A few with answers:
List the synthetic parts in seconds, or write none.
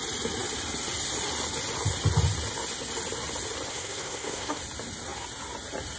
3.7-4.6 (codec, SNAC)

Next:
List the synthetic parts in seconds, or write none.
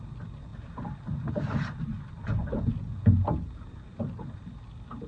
none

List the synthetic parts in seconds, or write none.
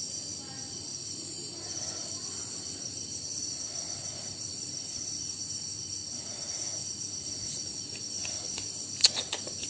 0.9-5.4 (vocoder, BigVGAN v2)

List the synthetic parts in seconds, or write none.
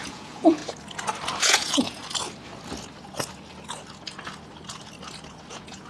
0.0-0.6 (vocoder, Vocos); 1.4-2.0; 5.5-5.9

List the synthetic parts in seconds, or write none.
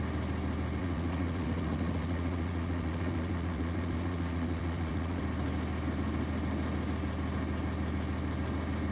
0.8-5.2 (vocoder, Vocos)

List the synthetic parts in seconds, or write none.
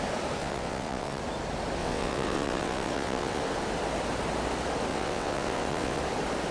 0.4-1.2 (vocoder, WaveNeXt); 1.8-3.4; 4.9-6.0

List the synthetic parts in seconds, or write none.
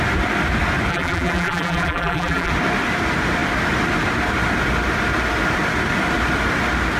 0.9-2.5 (vocoder, BigVGAN v2)